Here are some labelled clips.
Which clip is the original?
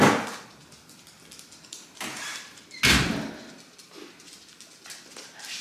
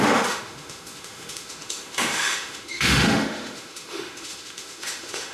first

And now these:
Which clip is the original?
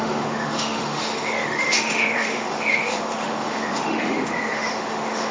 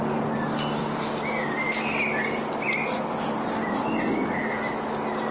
second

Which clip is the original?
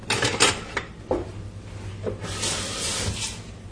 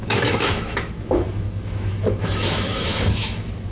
first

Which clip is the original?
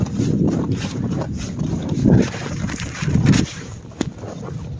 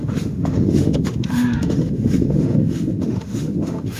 first